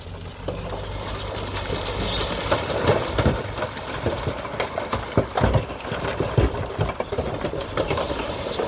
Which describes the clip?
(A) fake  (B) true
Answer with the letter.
B